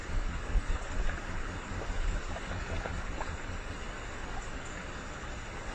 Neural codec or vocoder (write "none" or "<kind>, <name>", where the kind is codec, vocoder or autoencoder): codec, DAC